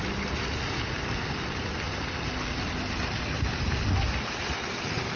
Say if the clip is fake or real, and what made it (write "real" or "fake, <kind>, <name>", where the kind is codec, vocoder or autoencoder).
real